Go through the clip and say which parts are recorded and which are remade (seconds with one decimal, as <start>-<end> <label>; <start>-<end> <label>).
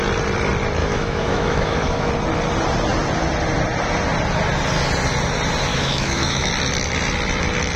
0.0-0.8 recorded; 0.8-2.1 remade; 2.1-5.7 recorded; 5.7-6.5 remade; 6.5-7.8 recorded